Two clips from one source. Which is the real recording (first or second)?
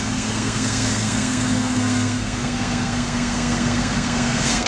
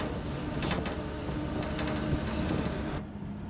second